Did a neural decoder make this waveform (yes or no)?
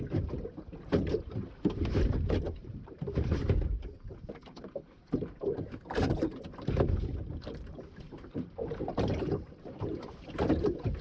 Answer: yes